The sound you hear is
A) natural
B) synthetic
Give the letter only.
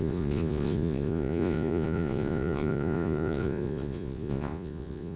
B